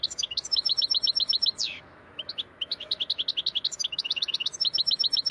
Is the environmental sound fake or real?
fake